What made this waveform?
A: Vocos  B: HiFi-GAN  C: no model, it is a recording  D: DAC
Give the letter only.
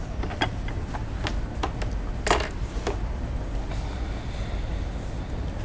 C